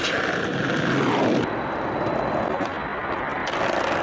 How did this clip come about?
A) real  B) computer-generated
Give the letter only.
A